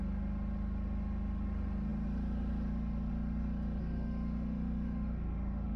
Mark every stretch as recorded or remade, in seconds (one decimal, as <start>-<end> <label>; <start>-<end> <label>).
0.0-3.8 recorded; 3.8-5.8 remade